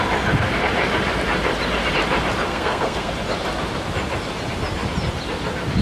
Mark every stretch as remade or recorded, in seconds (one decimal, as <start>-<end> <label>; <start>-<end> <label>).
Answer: 0.0-2.5 recorded; 2.5-3.1 remade; 3.1-5.8 recorded